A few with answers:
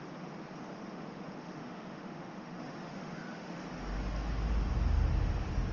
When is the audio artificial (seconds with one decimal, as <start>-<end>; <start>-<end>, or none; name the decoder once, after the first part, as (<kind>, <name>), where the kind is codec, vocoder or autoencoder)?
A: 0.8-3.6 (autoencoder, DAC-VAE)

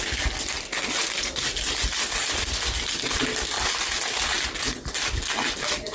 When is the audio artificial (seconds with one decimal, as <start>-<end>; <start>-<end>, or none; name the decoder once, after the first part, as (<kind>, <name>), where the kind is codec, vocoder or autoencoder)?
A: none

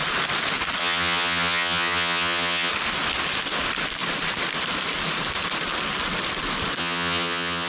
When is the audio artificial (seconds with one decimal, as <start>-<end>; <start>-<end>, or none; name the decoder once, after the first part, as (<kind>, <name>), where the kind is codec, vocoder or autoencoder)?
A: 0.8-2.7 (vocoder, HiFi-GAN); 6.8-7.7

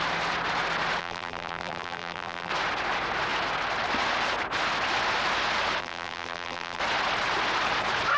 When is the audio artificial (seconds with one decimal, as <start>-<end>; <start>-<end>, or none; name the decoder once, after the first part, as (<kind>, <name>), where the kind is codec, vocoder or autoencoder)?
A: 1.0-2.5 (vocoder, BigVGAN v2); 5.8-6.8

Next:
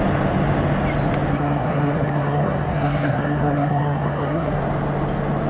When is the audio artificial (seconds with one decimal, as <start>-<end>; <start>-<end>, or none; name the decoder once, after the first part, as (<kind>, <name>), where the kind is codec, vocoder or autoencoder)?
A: 1.3-4.6 (codec, SNAC)

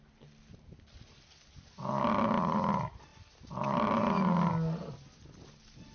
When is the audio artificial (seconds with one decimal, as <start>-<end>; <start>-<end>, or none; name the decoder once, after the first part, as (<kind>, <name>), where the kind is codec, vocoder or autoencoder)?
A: none

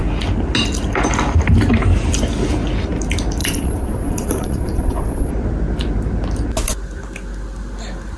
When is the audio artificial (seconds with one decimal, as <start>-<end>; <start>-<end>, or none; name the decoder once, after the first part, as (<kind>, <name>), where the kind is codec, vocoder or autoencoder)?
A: 3.4-5.3 (vocoder, Vocos)